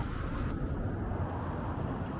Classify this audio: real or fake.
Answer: real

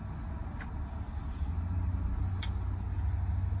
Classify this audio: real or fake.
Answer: real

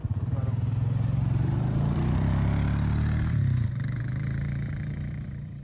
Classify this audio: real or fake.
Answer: fake